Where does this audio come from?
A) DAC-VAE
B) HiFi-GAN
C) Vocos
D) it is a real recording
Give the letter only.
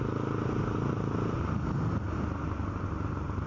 D